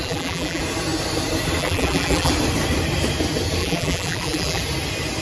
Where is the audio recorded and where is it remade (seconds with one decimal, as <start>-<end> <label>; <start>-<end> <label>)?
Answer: 0.0-0.6 remade; 0.6-1.6 recorded; 1.6-2.3 remade; 2.3-3.6 recorded; 3.6-4.6 remade; 4.6-5.2 recorded